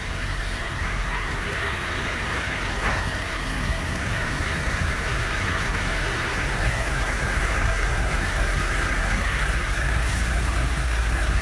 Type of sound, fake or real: fake